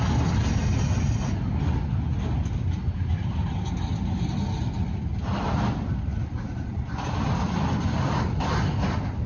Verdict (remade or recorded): recorded